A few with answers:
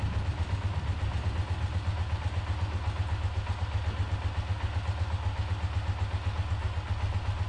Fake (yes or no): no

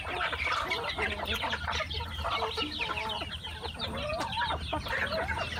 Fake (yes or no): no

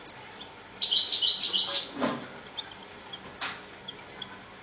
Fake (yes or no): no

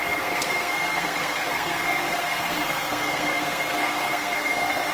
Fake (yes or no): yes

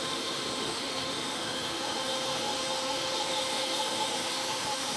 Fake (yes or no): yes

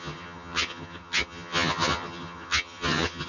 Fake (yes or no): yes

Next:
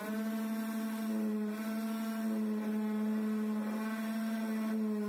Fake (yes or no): no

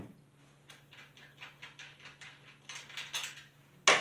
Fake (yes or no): no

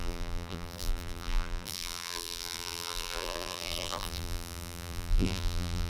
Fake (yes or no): yes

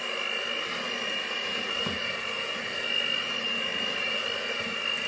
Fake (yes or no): no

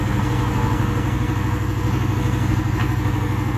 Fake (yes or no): yes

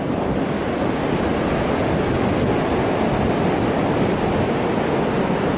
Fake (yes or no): no